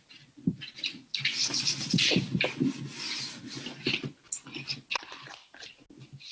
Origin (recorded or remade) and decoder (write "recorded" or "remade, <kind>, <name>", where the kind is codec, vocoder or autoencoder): recorded